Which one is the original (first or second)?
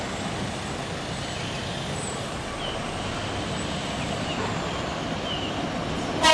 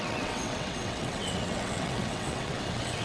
first